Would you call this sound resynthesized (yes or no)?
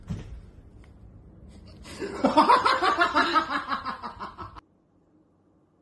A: no